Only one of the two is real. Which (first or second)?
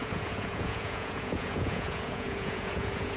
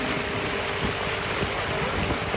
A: second